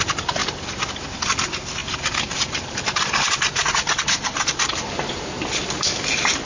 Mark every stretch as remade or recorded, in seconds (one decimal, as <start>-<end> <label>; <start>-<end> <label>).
0.0-0.4 remade; 0.4-1.4 recorded; 1.4-6.5 remade